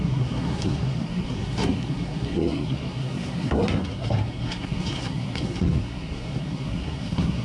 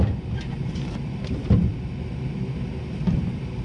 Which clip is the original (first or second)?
second